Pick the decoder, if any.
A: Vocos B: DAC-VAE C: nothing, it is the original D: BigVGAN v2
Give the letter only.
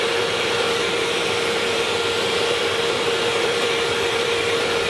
D